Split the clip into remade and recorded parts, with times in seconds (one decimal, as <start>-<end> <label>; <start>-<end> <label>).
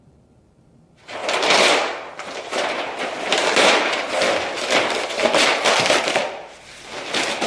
0.0-7.5 recorded